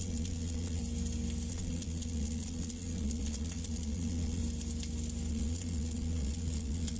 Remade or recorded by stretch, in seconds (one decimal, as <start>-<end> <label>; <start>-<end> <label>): 0.0-0.8 remade; 0.8-1.5 recorded; 1.5-4.4 remade; 4.4-5.3 recorded; 5.3-7.0 remade